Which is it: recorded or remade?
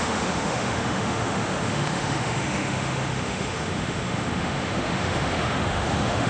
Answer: remade